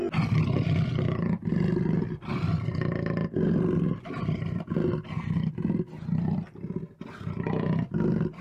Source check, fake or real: real